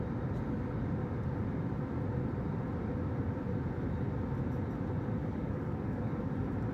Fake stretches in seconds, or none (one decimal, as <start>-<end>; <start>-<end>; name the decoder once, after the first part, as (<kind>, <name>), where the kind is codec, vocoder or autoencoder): 5.2-6.3 (codec, DAC)